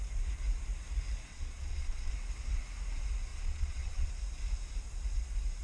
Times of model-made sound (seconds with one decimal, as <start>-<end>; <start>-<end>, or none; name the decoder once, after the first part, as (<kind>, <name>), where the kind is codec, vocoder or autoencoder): 1.3-2.1 (vocoder, Vocos); 3.3-4.1